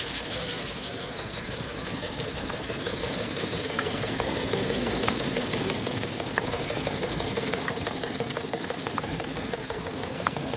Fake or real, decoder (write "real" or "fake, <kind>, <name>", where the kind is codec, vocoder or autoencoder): fake, codec, SNAC